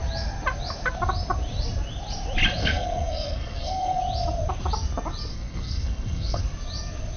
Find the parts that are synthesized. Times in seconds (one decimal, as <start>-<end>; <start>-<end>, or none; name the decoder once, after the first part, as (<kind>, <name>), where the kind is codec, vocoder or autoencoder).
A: 2.6-4.0 (codec, SNAC); 5.3-6.4